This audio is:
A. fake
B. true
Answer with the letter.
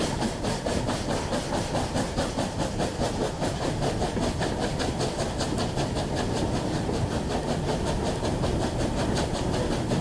B